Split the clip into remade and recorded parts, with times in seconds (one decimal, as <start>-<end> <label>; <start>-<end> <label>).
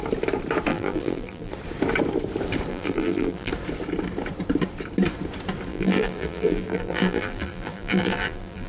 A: 0.0-0.7 recorded; 0.7-1.5 remade; 1.5-2.7 recorded; 2.7-3.5 remade; 3.5-5.7 recorded; 5.7-8.7 remade